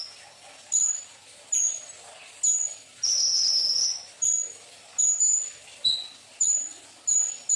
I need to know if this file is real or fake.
real